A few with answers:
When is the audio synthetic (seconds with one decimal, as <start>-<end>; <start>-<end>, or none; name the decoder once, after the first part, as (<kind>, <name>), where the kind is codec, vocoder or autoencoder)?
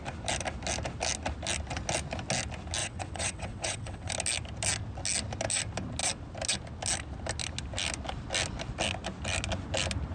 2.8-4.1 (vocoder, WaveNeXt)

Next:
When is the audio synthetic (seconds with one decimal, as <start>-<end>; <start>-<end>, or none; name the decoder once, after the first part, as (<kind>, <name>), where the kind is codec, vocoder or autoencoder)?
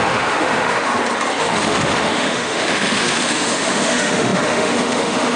0.0-0.9 (autoencoder, DAC-VAE); 1.4-5.4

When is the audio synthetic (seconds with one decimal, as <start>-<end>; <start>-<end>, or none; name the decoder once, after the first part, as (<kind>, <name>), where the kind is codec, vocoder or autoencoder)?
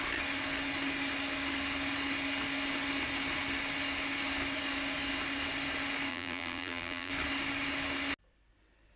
6.1-7.1 (vocoder, BigVGAN v2)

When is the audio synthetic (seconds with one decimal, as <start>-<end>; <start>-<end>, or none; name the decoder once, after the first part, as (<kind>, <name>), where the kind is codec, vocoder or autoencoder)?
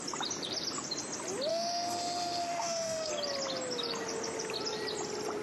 1.5-3.1 (autoencoder, DAC-VAE)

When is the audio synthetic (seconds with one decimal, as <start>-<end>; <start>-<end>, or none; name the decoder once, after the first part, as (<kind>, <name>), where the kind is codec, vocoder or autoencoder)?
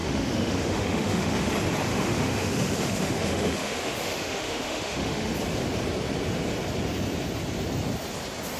0.0-1.5 (autoencoder, DAC-VAE); 1.9-5.3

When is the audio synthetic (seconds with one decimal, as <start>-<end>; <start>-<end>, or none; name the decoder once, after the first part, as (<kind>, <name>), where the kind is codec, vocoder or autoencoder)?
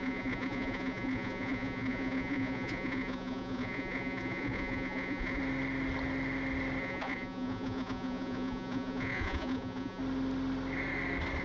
0.0-5.4 (vocoder, Vocos); 6.8-10.0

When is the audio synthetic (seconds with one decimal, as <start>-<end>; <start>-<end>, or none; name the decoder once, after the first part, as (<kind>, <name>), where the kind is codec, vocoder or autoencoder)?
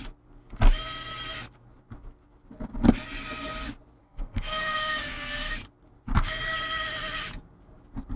4.0-5.5 (codec, SNAC)